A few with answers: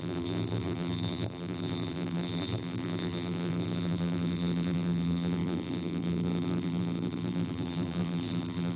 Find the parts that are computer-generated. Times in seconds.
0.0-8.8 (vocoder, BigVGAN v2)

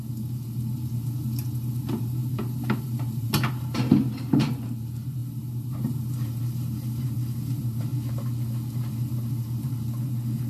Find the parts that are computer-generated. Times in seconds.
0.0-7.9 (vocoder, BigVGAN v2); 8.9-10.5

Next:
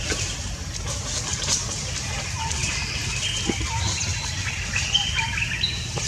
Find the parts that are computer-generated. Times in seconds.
1.3-2.0 (vocoder, BigVGAN v2); 4.1-5.3